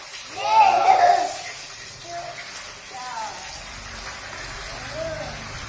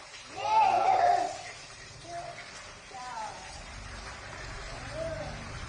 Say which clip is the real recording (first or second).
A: first